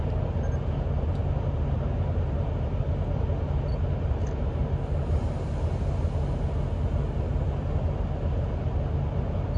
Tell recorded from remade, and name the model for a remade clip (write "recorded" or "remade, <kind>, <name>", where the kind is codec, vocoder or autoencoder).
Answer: recorded